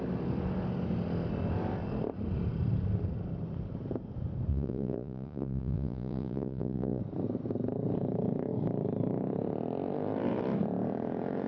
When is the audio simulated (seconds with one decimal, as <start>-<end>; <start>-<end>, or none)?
4.5-7.0

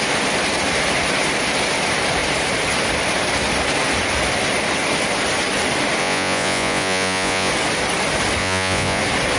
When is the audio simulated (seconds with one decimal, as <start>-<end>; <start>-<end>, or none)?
6.0-7.5; 8.4-9.0

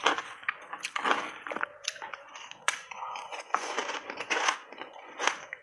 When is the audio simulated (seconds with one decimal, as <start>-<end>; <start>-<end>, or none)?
0.0-0.4; 2.1-5.6

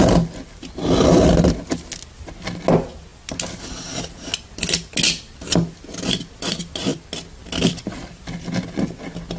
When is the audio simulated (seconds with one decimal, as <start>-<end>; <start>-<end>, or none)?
none

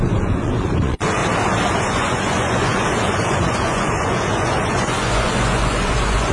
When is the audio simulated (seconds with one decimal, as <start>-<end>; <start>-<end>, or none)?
0.0-1.2; 1.8-6.3

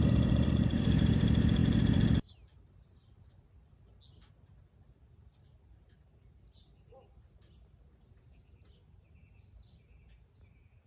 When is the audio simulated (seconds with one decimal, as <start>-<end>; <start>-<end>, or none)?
none

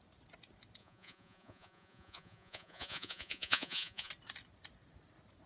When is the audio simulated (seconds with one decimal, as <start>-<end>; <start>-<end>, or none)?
0.8-4.1